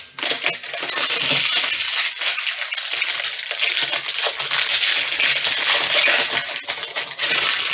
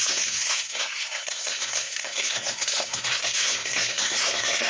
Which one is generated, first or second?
second